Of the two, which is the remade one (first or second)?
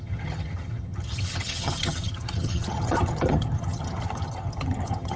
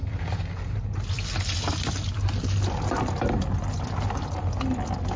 first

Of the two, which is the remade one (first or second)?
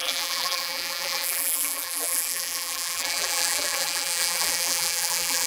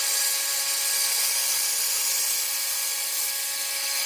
first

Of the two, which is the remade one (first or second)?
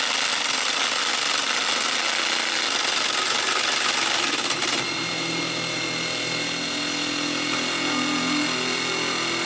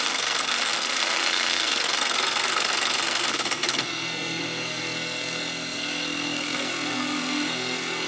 second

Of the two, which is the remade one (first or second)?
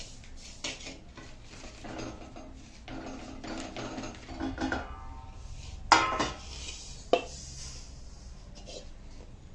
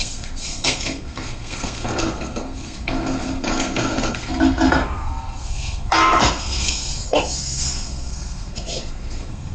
second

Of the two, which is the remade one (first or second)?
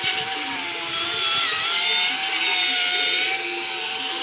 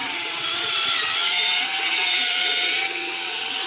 second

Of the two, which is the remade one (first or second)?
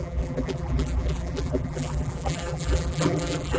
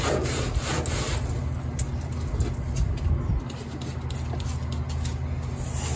first